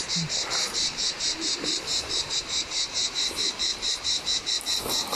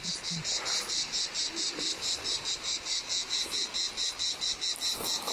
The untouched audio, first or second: second